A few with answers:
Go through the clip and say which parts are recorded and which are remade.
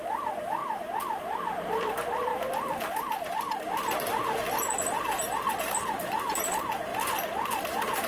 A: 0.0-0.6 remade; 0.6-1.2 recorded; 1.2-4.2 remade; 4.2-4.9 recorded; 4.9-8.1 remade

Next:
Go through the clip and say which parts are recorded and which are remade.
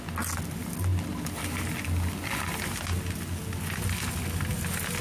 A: 0.0-5.0 recorded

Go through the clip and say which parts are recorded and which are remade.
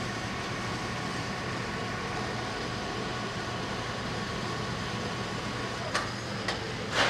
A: 0.0-1.1 recorded; 1.1-1.7 remade; 1.7-3.1 recorded; 3.1-4.3 remade; 4.3-7.1 recorded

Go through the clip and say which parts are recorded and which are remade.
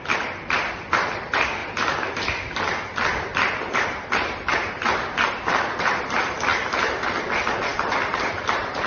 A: 0.0-1.6 remade; 1.6-5.3 recorded; 5.3-8.9 remade